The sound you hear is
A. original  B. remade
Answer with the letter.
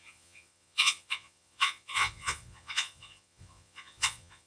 B